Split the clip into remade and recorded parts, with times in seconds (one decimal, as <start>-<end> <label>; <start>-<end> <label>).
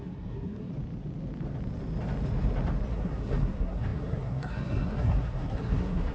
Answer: 0.0-0.7 remade; 0.7-2.9 recorded; 2.9-6.1 remade